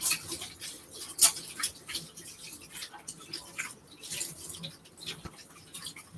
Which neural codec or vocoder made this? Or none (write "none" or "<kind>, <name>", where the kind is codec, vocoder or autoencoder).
none